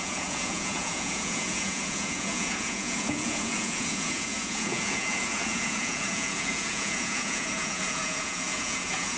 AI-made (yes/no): yes